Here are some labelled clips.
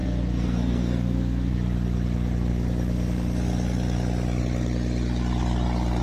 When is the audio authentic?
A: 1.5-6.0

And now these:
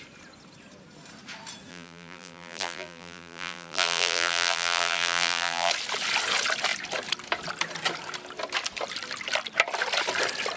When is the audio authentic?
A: 0.0-1.7; 5.7-10.6

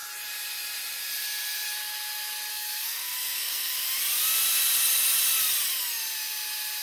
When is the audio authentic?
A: 0.0-2.5; 3.7-6.8